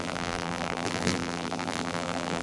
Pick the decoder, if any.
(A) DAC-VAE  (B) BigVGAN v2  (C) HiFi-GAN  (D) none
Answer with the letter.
B